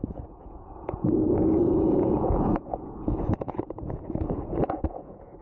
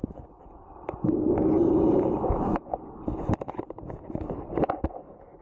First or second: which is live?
second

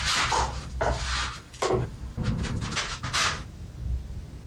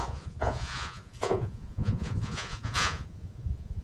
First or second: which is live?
first